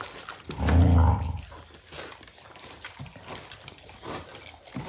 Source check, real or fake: real